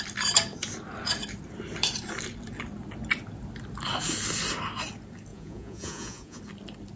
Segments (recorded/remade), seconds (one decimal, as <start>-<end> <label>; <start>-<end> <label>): 0.0-5.3 recorded; 5.3-6.4 remade; 6.4-7.0 recorded